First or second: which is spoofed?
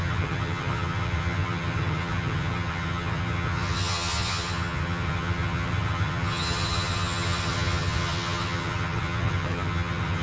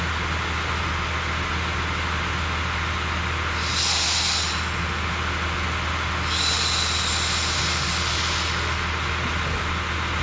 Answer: first